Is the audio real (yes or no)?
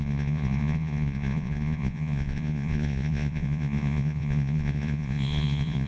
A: no